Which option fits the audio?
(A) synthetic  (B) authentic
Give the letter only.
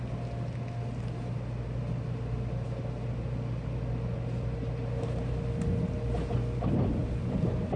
B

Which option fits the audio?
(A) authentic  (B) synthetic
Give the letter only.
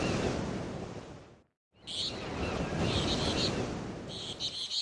A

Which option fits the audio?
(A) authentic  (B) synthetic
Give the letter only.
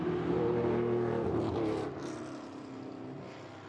A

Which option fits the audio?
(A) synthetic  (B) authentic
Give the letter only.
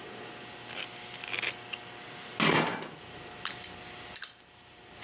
B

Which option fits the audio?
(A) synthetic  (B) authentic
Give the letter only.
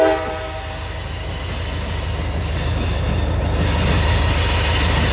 B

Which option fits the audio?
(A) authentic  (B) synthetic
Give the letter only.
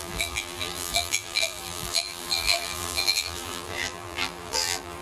B